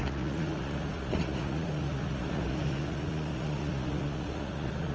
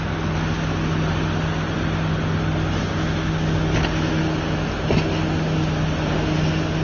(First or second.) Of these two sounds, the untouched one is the second